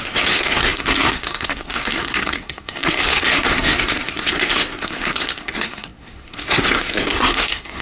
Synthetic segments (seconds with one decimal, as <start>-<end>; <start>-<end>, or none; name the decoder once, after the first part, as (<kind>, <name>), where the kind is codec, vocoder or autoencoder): 0.0-7.8 (codec, SNAC)